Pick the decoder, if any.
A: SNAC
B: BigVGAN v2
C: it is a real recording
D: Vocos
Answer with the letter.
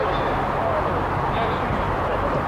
C